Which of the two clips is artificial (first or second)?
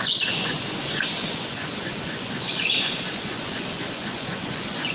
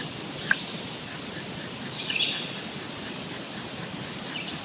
first